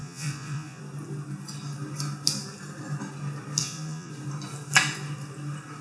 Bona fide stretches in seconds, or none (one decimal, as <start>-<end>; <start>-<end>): 0.8-3.6; 4.1-5.8